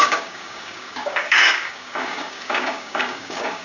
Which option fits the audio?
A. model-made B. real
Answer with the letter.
A